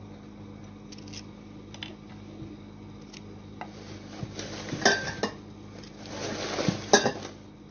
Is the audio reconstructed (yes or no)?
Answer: no